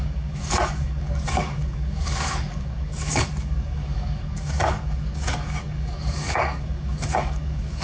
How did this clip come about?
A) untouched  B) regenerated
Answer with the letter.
B